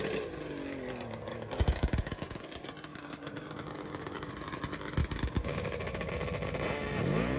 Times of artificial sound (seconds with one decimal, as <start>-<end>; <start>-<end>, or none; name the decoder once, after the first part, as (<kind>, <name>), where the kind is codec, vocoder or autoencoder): 1.3-2.4 (codec, DAC); 2.9-4.3; 5.0-6.1